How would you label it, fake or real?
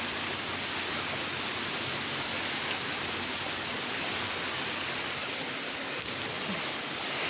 real